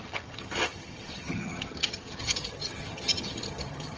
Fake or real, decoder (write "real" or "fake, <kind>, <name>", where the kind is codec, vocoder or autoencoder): fake, vocoder, HiFi-GAN